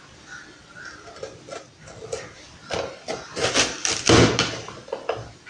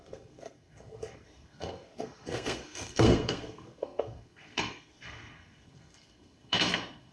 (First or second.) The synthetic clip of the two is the second